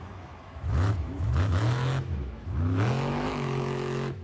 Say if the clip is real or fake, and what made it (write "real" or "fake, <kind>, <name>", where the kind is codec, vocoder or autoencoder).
fake, autoencoder, DAC-VAE